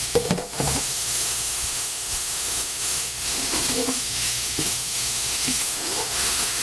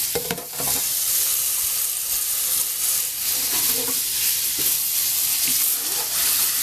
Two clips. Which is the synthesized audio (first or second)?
first